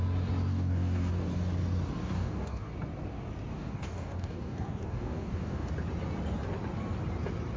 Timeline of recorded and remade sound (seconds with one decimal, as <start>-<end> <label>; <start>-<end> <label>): 0.0-0.5 recorded; 0.5-1.1 remade; 1.1-2.0 recorded; 2.0-2.7 remade; 2.7-3.5 recorded; 3.5-5.7 remade; 5.7-7.6 recorded